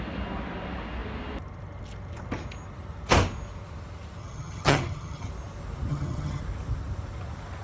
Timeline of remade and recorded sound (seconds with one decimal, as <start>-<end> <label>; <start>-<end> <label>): 0.0-4.2 recorded; 4.2-5.3 remade; 5.3-5.9 recorded; 5.9-6.4 remade; 6.4-7.6 recorded